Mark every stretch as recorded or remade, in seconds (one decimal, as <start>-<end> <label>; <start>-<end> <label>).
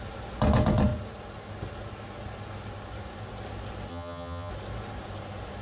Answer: 0.0-3.9 recorded; 3.9-4.5 remade; 4.5-5.6 recorded